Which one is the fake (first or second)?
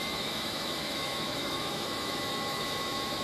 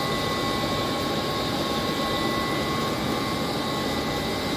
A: first